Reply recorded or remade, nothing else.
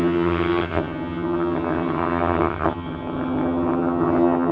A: remade